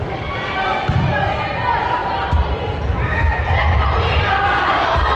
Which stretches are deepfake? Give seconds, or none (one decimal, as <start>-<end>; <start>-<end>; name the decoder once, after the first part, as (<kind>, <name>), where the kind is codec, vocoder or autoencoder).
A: none